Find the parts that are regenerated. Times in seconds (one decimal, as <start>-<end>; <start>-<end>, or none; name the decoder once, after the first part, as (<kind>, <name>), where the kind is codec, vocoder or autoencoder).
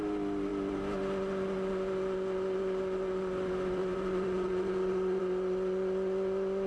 3.8-5.2 (vocoder, Vocos)